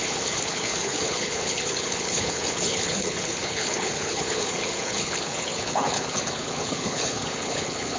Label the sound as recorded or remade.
remade